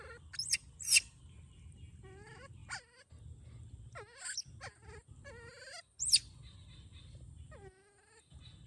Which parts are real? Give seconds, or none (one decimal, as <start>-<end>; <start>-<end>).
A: 0.0-8.7